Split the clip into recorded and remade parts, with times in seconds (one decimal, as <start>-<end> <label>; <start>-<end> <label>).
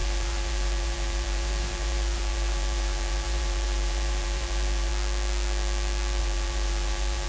0.0-4.9 remade; 4.9-6.2 recorded; 6.2-7.3 remade